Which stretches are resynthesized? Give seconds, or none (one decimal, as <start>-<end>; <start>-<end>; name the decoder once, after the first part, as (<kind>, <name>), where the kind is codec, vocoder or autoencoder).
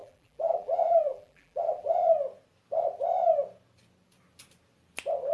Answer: 0.0-2.1 (vocoder, BigVGAN v2)